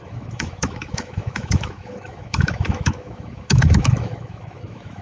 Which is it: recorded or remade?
remade